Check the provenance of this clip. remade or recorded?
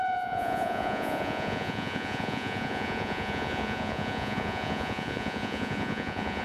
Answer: remade